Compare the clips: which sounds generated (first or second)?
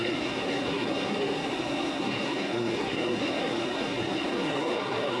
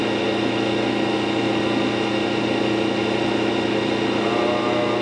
first